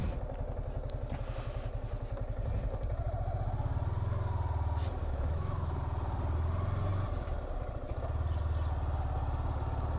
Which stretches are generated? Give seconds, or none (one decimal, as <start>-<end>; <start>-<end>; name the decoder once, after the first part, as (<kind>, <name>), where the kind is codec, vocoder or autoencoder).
5.0-5.8 (autoencoder, DAC-VAE)